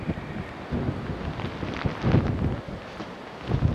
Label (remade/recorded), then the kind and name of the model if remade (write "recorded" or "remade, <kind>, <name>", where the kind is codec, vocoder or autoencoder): recorded